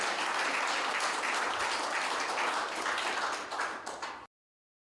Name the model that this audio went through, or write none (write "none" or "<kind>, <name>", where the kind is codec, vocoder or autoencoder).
none